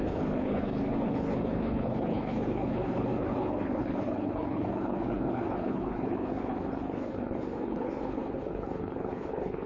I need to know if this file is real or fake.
fake